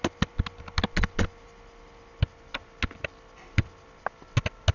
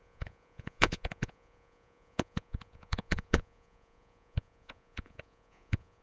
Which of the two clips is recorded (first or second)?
first